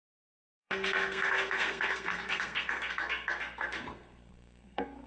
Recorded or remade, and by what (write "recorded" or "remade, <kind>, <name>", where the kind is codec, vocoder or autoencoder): remade, codec, SNAC